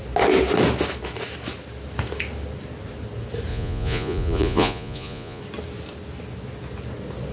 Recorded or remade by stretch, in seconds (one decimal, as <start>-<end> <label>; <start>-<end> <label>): 0.0-3.5 recorded; 3.5-5.4 remade; 5.4-7.3 recorded